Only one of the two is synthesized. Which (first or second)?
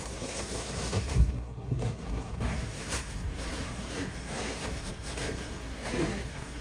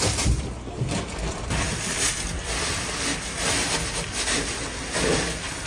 first